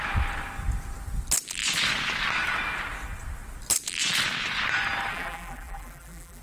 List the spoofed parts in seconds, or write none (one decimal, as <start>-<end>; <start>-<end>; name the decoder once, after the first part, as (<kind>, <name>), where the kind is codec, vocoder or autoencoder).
5.1-6.4 (vocoder, BigVGAN v2)